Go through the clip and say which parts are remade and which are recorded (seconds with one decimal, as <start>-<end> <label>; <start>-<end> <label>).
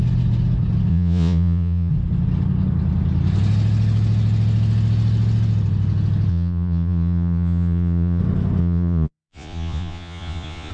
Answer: 0.0-0.9 recorded; 0.9-1.9 remade; 1.9-6.3 recorded; 6.3-8.2 remade; 8.2-8.6 recorded; 8.6-10.7 remade